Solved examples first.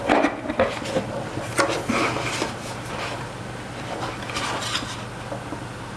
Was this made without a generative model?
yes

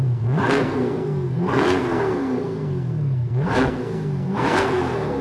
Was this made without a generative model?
no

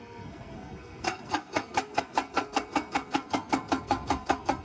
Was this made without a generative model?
no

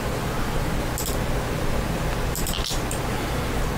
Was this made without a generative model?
yes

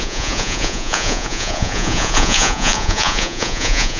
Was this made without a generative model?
no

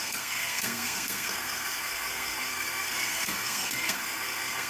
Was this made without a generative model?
no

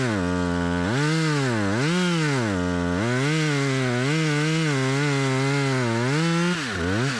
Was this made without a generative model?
yes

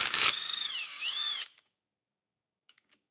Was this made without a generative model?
no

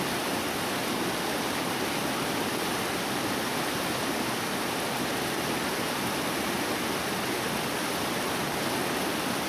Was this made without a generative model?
yes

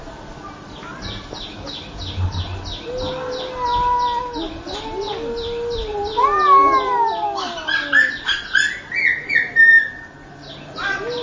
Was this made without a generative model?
yes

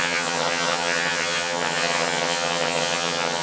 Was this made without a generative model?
no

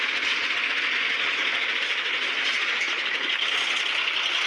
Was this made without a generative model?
yes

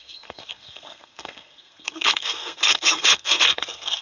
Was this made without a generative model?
no